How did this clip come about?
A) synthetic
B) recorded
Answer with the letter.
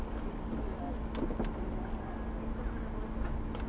B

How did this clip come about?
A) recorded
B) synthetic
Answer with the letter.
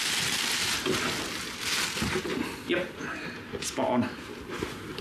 A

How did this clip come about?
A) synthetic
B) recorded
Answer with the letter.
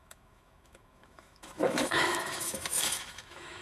A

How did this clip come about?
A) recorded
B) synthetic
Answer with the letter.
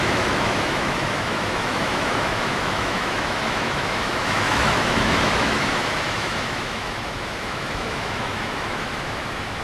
B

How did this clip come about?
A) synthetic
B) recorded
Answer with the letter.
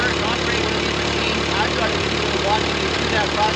B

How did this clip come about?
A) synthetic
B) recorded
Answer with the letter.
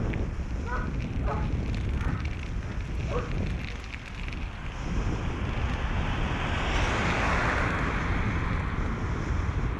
B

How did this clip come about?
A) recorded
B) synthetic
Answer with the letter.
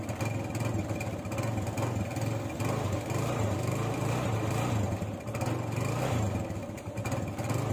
A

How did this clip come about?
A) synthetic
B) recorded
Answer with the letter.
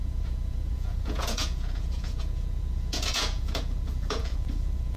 A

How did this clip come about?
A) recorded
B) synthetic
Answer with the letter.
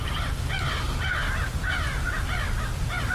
A